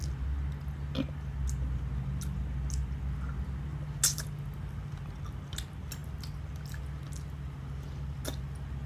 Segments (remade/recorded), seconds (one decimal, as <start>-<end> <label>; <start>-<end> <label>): 0.0-8.9 recorded